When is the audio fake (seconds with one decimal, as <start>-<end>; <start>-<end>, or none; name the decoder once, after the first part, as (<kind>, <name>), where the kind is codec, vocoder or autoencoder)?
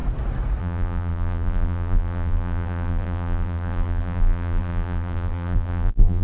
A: 0.6-6.2 (vocoder, BigVGAN v2)